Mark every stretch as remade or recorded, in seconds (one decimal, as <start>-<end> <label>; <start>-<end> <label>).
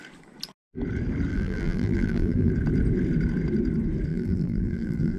0.0-1.3 recorded; 1.3-2.5 remade; 2.5-4.1 recorded; 4.1-5.2 remade